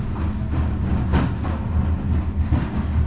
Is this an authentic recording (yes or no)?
yes